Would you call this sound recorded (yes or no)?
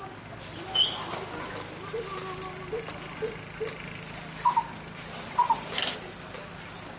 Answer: yes